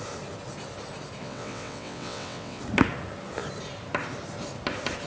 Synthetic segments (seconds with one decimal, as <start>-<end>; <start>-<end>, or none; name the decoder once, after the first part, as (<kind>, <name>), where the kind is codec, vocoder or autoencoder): 1.2-2.6 (vocoder, WaveNeXt)